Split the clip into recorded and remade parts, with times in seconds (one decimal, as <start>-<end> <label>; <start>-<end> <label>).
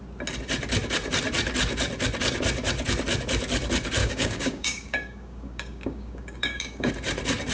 0.0-4.0 recorded; 4.0-6.9 remade; 6.9-7.5 recorded